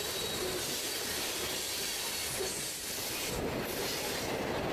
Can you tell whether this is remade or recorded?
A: recorded